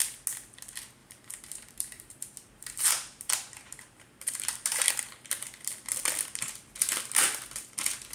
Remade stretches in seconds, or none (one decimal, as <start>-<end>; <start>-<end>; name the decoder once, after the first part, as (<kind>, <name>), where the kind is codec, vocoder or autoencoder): 1.0-4.9 (vocoder, BigVGAN v2)